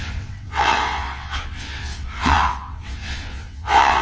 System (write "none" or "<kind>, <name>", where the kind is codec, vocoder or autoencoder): vocoder, WaveNeXt